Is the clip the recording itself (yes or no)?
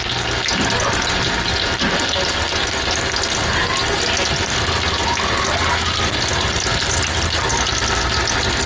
yes